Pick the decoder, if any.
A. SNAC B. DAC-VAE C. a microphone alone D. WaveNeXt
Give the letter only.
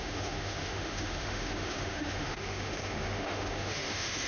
B